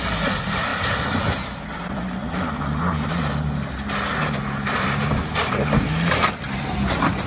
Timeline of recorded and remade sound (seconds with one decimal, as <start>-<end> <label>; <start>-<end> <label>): 0.0-7.3 recorded